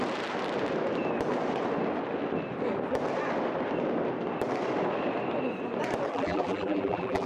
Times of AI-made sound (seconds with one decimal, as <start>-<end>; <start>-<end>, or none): 6.1-7.3